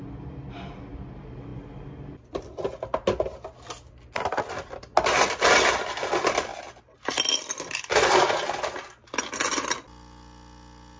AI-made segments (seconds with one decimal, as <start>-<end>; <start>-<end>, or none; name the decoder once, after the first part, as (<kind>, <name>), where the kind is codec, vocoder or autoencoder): none